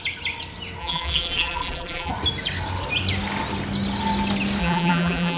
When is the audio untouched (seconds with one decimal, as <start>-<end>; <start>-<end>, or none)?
0.0-0.8; 2.1-4.6